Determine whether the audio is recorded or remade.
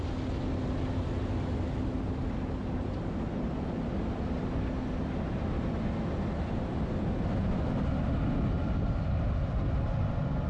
recorded